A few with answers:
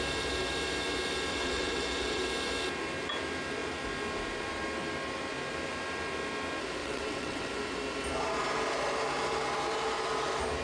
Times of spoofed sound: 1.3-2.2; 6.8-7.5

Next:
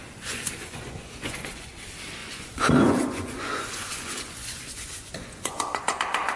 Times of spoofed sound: 0.0-1.7; 2.2-6.0

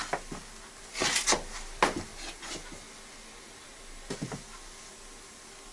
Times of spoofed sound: none

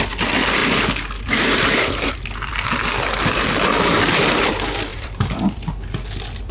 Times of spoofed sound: 0.6-4.5; 4.9-5.7

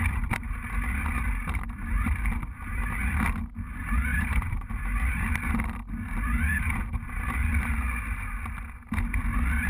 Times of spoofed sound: 4.1-4.7